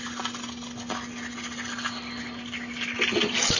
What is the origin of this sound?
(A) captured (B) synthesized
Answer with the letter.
A